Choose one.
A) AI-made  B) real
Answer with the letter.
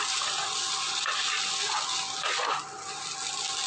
B